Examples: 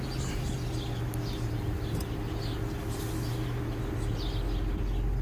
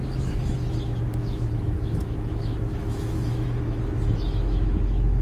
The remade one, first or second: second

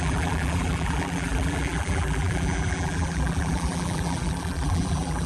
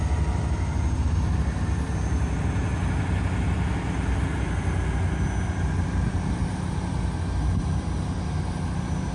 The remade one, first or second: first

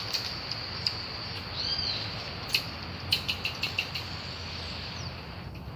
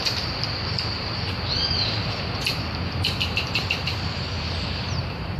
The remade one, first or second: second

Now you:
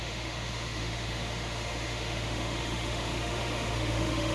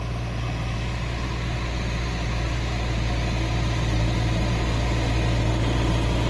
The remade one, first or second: first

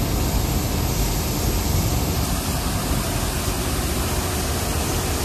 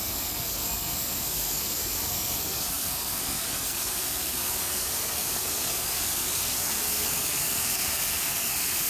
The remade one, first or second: second